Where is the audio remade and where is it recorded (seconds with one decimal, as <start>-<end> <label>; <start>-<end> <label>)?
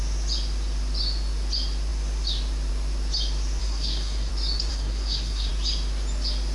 0.0-3.6 recorded; 3.6-4.3 remade; 4.3-4.7 recorded; 4.7-5.5 remade; 5.5-6.5 recorded